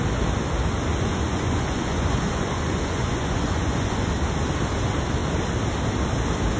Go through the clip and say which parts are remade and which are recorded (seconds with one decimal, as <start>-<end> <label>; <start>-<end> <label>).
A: 0.0-0.9 recorded; 0.9-4.1 remade; 4.1-6.6 recorded